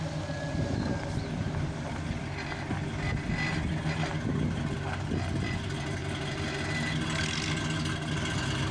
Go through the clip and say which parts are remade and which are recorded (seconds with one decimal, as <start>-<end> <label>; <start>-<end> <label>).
0.0-8.7 recorded